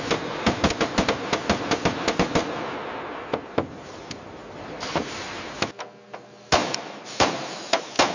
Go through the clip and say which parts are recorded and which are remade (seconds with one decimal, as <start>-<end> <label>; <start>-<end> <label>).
0.0-6.6 recorded; 6.6-7.3 remade; 7.3-8.1 recorded